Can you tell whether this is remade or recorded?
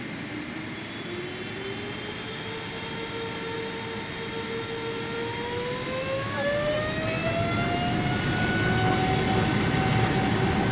recorded